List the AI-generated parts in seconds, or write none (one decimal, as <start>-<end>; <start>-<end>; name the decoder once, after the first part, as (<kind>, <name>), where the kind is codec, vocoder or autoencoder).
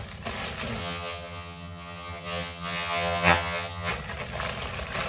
0.8-3.9 (vocoder, HiFi-GAN)